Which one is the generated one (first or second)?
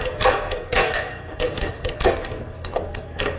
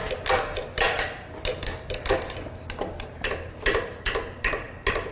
first